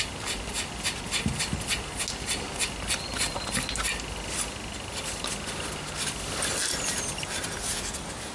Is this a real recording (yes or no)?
yes